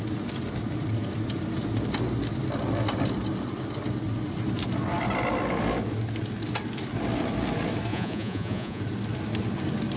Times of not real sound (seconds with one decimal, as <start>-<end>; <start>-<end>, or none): 7.9-8.8